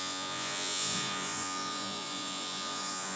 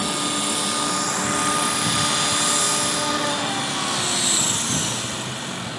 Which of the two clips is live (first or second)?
second